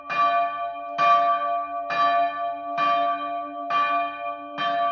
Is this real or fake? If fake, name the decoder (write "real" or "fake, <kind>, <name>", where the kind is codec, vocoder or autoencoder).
real